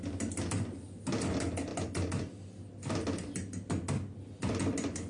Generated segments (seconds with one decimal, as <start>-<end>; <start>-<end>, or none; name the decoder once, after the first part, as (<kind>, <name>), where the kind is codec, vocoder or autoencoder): none